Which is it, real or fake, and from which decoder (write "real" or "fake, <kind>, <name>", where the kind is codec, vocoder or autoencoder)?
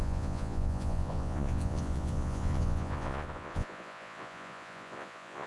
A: fake, vocoder, Vocos